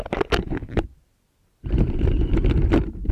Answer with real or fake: real